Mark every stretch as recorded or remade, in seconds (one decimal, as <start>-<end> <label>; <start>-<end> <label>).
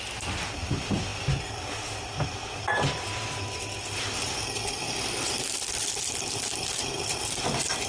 0.0-7.9 recorded